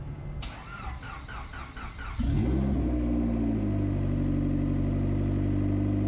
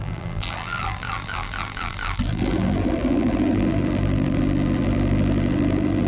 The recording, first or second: first